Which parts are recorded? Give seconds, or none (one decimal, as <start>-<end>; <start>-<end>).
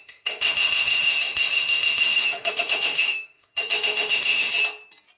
4.5-5.2